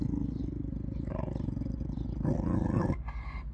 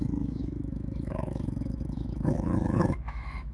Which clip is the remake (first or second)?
second